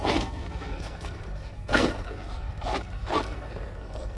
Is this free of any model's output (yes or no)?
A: no